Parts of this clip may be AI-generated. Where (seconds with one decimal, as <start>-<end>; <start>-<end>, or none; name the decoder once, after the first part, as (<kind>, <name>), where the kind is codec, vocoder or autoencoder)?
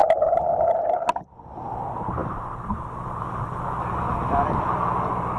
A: none